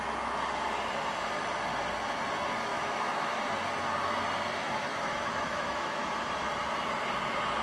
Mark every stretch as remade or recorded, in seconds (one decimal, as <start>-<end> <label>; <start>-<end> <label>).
0.0-2.7 recorded; 2.7-3.4 remade; 3.4-4.9 recorded; 4.9-6.0 remade; 6.0-7.6 recorded

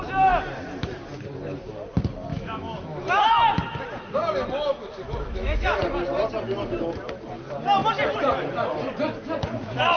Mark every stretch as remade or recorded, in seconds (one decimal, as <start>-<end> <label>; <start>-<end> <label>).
0.0-2.3 recorded; 2.3-3.2 remade; 3.2-4.7 recorded; 4.7-5.8 remade; 5.8-10.0 recorded

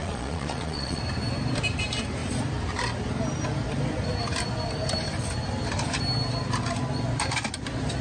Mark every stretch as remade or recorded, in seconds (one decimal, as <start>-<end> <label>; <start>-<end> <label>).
0.0-1.0 remade; 1.0-8.0 recorded